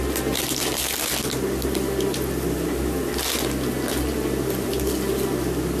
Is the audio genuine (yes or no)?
yes